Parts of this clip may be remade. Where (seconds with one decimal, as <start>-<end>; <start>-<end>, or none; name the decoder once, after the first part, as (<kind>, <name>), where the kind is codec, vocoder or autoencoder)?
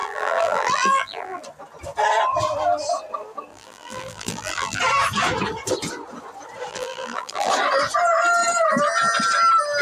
0.0-1.4 (vocoder, BigVGAN v2); 3.5-4.8; 6.7-7.5